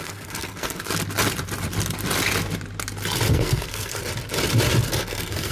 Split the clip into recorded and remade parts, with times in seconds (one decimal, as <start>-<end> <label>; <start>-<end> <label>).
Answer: 0.0-0.9 remade; 0.9-3.3 recorded; 3.3-4.0 remade; 4.0-5.0 recorded; 5.0-5.5 remade

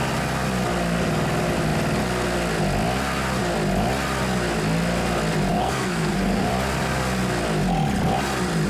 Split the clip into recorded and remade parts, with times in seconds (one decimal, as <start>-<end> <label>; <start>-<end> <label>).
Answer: 0.0-5.5 recorded; 5.5-6.5 remade; 6.5-8.7 recorded

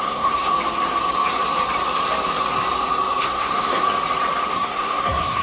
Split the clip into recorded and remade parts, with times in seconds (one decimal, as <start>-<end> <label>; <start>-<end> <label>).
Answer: 0.0-0.5 remade; 0.5-3.2 recorded; 3.2-3.8 remade; 3.8-4.5 recorded; 4.5-5.4 remade

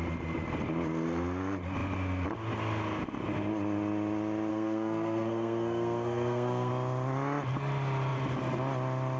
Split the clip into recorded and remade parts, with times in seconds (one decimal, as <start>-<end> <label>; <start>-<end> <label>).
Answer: 0.0-4.5 recorded; 4.5-6.7 remade; 6.7-9.2 recorded

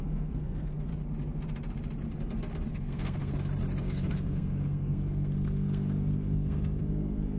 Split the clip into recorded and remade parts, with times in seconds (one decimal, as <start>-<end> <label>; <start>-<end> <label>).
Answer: 0.0-0.9 remade; 0.9-2.7 recorded; 2.7-3.3 remade; 3.3-3.8 recorded; 3.8-7.4 remade

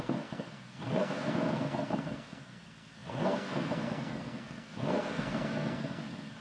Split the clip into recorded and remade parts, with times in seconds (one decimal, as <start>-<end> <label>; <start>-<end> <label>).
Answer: 0.0-6.4 remade

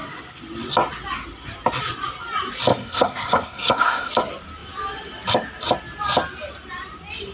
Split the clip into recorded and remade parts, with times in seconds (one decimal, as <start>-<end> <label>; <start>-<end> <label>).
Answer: 0.0-2.7 recorded; 2.7-4.1 remade; 4.1-7.3 recorded